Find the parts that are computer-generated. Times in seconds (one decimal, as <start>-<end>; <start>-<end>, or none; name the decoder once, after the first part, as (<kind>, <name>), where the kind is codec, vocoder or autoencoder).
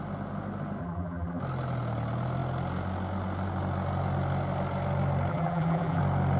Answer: 0.8-1.4 (vocoder, BigVGAN v2); 5.3-6.0